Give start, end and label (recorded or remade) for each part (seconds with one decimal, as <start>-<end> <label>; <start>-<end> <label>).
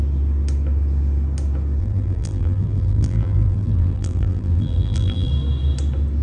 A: 0.0-1.8 recorded; 1.8-5.3 remade; 5.3-6.2 recorded